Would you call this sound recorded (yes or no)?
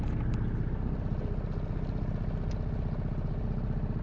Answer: yes